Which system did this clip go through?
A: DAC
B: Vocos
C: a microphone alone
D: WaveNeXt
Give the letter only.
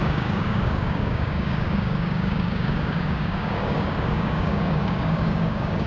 A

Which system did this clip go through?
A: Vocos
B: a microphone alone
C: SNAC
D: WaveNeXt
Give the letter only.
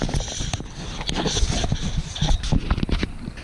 B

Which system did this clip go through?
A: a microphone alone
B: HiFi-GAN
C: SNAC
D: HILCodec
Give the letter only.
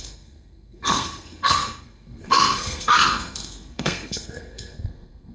C